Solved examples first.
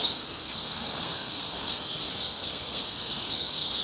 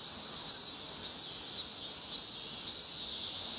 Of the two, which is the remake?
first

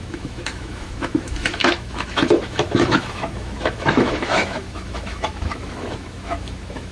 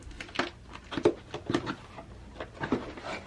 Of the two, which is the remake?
first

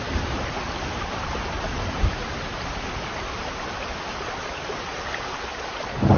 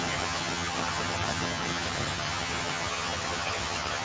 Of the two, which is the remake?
second